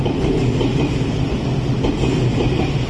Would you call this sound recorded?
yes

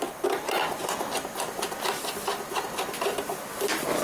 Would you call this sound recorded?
yes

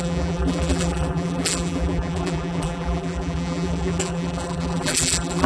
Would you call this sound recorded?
no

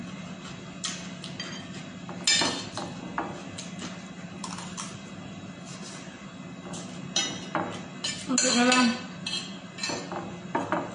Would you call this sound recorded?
yes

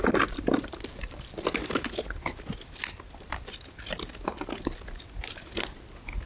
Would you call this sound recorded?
yes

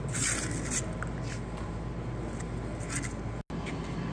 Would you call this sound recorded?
yes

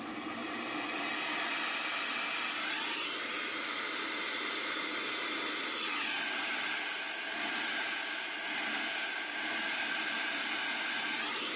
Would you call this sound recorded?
yes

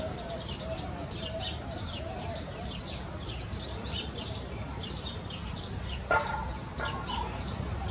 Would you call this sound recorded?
no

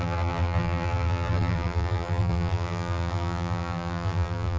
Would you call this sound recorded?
no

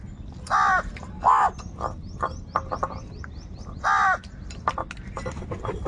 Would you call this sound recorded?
yes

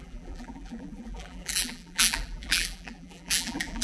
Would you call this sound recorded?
no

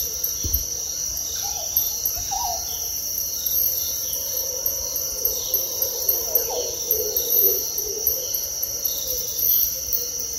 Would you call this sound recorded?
no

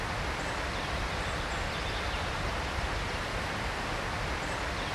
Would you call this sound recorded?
yes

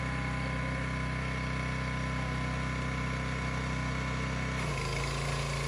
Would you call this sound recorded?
yes